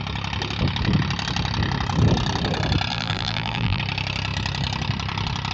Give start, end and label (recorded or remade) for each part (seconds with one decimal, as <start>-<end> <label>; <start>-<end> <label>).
0.0-2.9 recorded; 2.9-3.8 remade; 3.8-5.5 recorded